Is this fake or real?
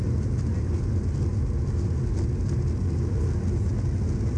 real